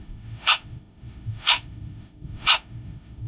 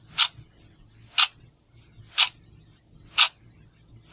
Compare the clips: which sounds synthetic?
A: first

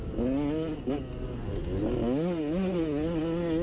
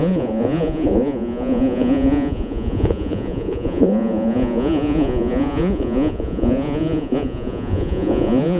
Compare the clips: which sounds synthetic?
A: second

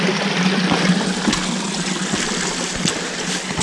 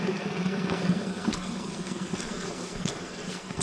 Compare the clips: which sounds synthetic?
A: second